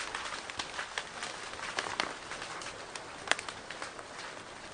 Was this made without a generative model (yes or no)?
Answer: yes